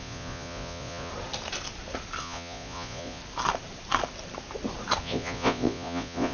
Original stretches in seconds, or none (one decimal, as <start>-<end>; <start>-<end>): 1.1-2.2; 3.2-5.0